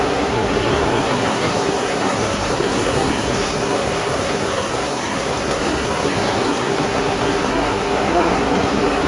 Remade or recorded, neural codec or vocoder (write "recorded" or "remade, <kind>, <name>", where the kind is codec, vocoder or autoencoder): remade, codec, SNAC